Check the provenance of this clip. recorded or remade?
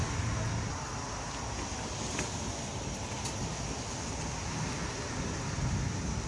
recorded